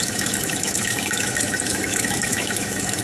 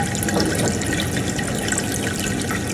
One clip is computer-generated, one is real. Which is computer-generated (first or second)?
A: first